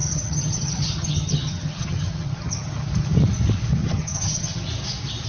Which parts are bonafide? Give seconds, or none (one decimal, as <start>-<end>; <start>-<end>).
2.7-3.8; 4.7-5.3